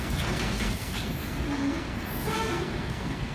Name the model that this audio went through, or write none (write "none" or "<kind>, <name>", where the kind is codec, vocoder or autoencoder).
codec, SNAC